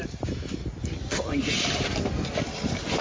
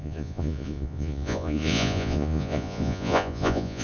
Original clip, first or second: first